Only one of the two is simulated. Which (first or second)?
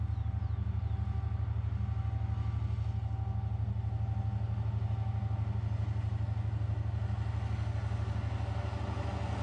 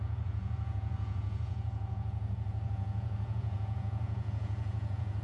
second